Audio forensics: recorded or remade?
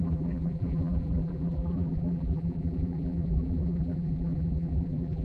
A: remade